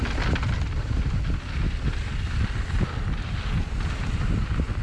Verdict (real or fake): real